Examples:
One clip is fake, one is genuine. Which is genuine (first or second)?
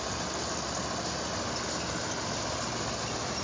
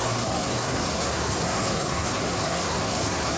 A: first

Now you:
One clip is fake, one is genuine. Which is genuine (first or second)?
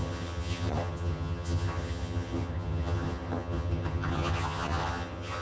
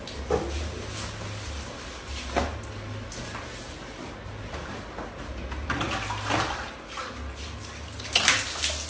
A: second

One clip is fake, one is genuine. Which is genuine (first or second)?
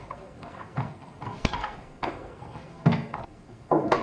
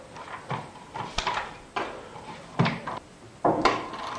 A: second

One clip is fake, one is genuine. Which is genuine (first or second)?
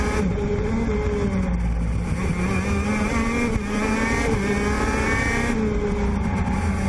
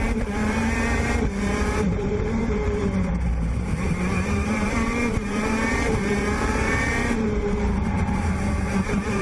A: first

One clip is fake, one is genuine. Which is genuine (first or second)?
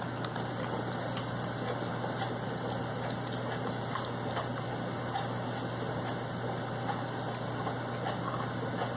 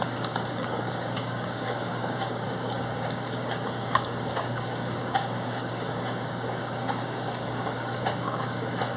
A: first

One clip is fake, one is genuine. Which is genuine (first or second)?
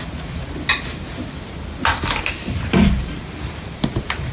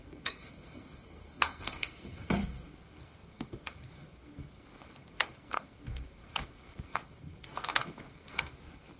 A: first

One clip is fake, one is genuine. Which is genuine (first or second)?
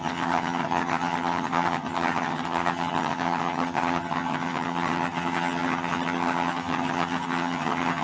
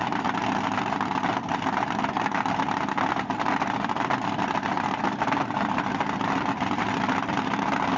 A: second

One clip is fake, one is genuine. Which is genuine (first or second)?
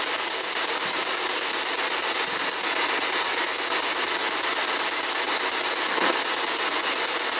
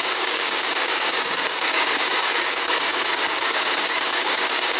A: first